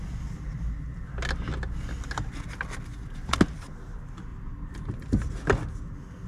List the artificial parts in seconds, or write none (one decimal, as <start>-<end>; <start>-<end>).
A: 4.3-5.3